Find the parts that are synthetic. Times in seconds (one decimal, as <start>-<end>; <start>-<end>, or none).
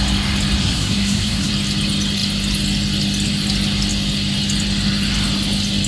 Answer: 0.6-1.5